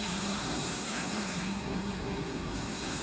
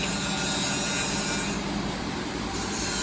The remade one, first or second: first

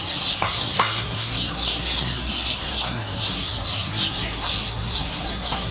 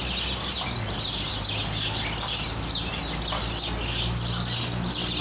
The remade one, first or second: first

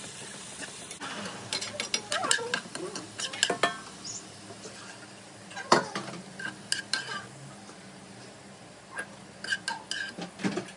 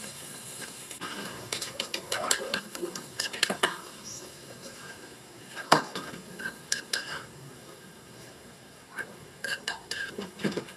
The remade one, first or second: second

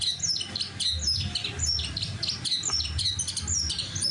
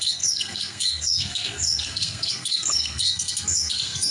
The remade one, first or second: second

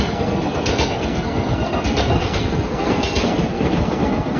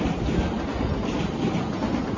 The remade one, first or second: first